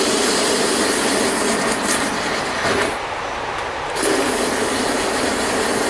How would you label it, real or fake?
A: real